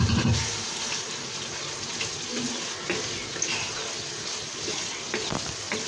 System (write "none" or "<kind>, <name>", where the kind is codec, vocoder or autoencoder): none